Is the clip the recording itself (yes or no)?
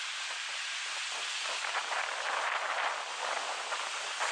yes